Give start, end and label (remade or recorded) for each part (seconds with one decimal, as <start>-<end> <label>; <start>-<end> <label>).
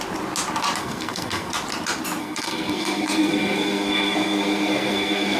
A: 0.0-0.8 recorded; 0.8-1.5 remade; 1.5-2.2 recorded; 2.2-5.4 remade